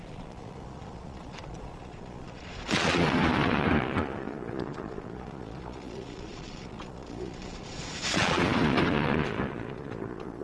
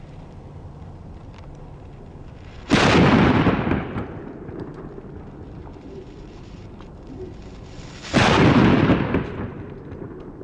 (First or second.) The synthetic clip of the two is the first